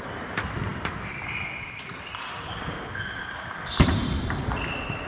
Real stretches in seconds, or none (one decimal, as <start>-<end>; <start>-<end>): 0.0-0.7; 2.6-4.0